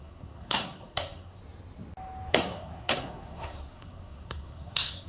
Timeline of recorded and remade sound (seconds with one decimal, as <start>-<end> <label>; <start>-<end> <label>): 0.0-1.4 remade; 1.4-2.3 recorded; 2.3-5.1 remade